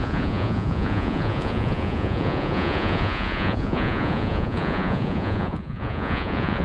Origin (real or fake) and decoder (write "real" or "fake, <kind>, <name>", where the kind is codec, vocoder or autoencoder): fake, vocoder, Vocos